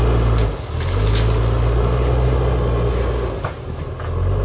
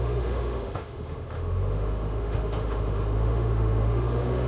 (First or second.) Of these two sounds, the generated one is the second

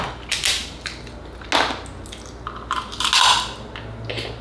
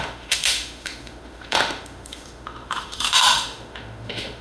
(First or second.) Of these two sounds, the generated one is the second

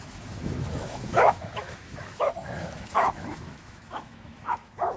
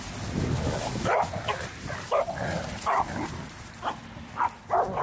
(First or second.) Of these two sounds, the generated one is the first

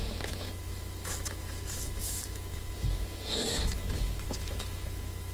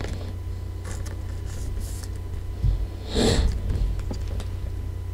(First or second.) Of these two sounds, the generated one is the first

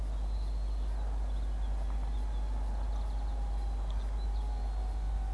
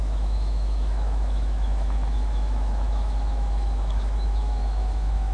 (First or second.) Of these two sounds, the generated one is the second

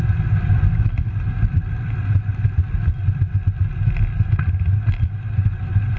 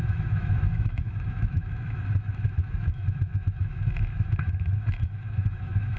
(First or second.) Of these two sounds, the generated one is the second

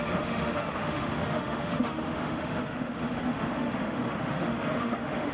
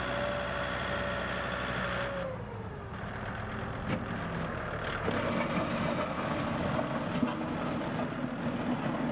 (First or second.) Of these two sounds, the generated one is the first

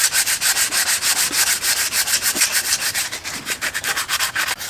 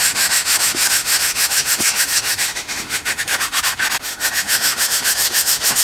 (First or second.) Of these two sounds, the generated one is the second